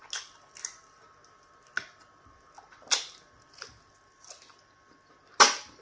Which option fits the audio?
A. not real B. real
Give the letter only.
B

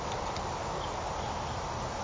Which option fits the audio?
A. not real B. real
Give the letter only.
B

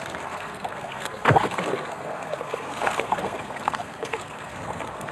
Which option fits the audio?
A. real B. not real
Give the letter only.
B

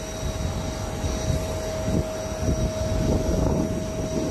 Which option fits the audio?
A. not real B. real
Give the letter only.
B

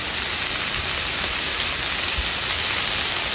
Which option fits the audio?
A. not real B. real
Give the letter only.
B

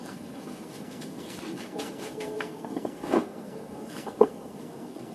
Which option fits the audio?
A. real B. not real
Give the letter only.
B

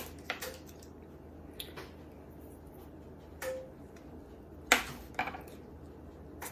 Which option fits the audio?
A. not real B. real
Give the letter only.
B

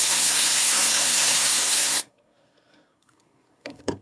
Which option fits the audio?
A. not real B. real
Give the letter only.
A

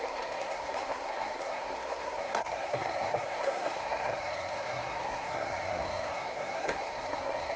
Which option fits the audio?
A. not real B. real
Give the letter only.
A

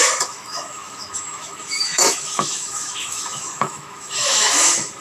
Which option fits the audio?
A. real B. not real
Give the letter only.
B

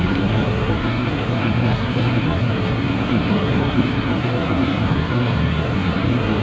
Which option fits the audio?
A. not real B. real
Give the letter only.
A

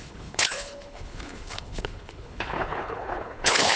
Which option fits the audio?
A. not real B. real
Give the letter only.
A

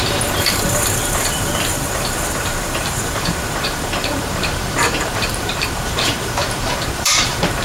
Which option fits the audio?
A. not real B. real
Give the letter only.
A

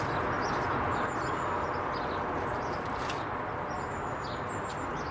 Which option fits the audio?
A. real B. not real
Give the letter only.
A